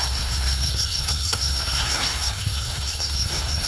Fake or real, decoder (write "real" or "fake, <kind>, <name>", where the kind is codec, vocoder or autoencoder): fake, codec, SNAC